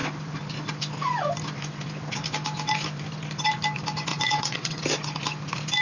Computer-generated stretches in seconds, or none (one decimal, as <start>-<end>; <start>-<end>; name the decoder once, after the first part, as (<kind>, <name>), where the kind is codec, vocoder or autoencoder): 4.1-4.8 (vocoder, WaveNeXt)